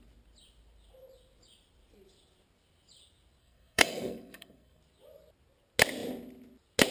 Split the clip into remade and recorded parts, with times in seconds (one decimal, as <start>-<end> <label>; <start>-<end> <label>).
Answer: 0.0-3.4 recorded; 3.4-4.8 remade; 4.8-6.9 recorded